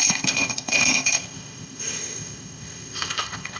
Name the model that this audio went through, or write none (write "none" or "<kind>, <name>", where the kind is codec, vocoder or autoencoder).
codec, ZipCodec